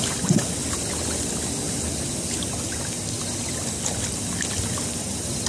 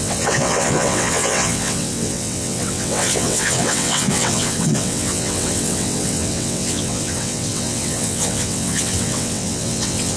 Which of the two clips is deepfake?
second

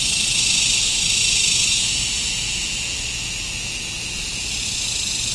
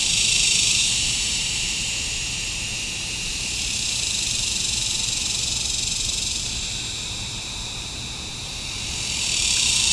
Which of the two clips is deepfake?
second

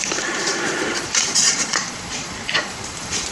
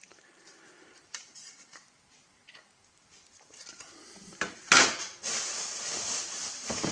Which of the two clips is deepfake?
first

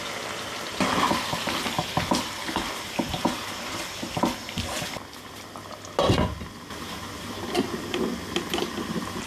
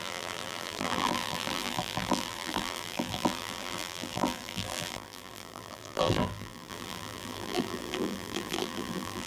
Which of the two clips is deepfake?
second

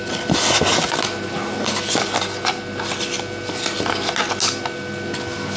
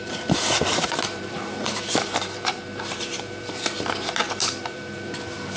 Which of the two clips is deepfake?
second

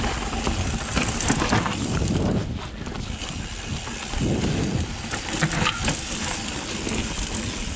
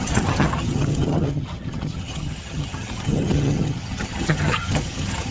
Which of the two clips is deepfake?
second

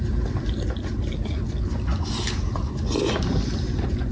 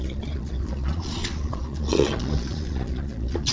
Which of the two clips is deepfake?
second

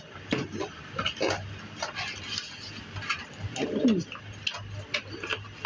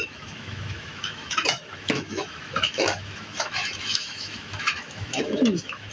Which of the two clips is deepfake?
second